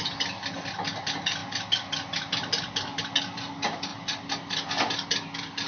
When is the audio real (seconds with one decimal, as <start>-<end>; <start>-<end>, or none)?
0.0-5.7